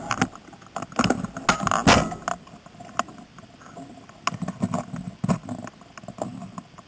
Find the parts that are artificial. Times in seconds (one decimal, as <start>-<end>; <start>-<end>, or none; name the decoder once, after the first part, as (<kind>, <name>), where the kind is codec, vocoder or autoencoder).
none